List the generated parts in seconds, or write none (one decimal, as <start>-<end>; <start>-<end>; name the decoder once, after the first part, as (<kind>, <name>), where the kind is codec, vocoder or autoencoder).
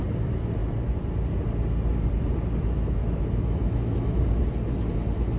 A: 3.0-4.2 (autoencoder, DAC-VAE)